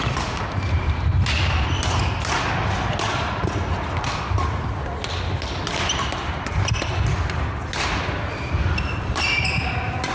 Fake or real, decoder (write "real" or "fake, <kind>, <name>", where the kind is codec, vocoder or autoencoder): real